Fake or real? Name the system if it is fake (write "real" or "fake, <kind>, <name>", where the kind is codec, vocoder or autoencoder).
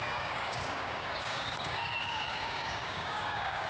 fake, codec, DAC